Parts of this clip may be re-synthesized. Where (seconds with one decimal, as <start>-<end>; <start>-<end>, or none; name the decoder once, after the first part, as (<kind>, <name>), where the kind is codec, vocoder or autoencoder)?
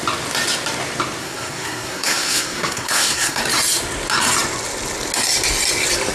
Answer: 1.2-3.4 (codec, SNAC)